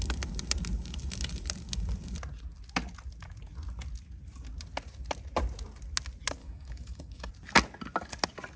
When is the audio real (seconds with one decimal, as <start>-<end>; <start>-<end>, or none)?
0.0-6.4; 7.3-8.6